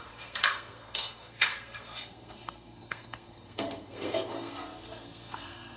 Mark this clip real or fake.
fake